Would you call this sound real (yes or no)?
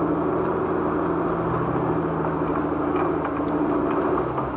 yes